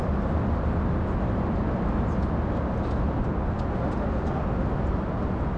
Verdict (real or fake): real